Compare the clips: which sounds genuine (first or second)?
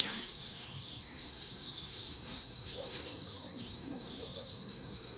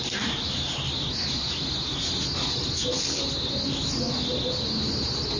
second